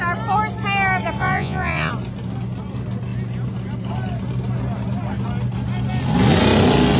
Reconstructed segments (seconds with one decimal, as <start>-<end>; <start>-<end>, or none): 1.2-1.9